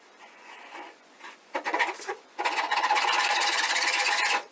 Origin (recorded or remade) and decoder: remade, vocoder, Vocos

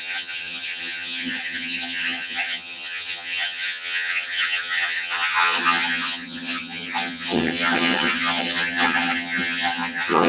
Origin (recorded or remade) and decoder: remade, vocoder, HiFi-GAN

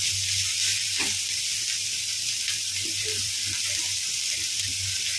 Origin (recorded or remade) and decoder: recorded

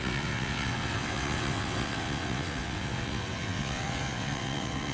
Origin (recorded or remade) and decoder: remade, vocoder, WaveNeXt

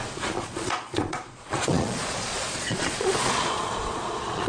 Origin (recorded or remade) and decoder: remade, vocoder, Vocos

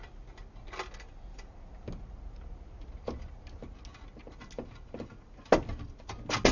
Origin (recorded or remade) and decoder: recorded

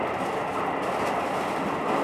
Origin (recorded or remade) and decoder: recorded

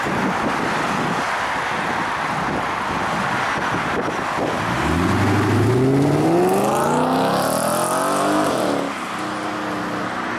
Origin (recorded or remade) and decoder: recorded